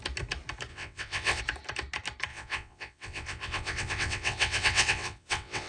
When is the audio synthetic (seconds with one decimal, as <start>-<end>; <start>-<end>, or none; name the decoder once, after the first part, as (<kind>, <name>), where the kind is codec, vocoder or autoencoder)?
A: 0.7-1.4 (vocoder, WaveNeXt); 2.3-5.7